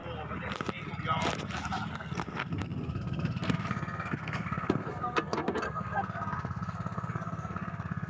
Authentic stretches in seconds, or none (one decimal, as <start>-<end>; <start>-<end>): 0.0-1.9